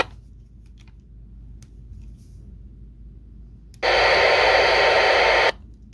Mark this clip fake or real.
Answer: real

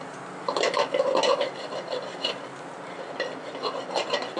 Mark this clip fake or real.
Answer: real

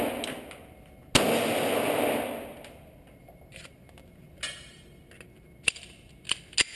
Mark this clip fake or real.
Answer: real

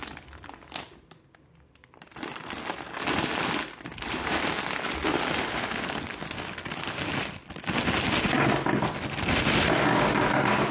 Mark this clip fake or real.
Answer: real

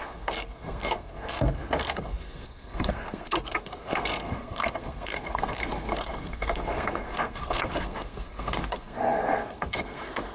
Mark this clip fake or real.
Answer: fake